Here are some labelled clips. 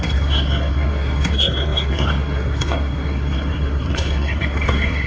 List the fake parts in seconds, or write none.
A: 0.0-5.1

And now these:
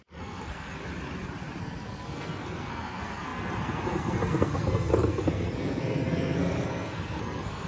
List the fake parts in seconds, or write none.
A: 0.0-0.8; 1.6-7.7

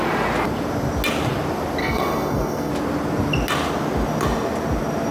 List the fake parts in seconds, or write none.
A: 1.8-2.7